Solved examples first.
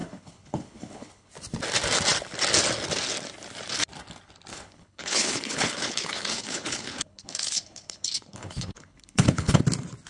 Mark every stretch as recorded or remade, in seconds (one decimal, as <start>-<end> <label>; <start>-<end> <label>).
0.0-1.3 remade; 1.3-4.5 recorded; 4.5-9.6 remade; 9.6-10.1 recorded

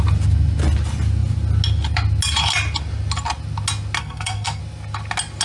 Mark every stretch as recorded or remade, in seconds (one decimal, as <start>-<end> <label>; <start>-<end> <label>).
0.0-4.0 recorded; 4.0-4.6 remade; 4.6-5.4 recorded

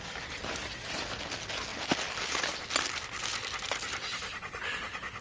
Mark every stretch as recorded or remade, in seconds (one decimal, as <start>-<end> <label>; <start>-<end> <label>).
0.0-5.2 recorded